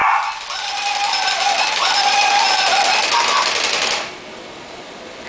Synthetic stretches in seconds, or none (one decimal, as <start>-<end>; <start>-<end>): none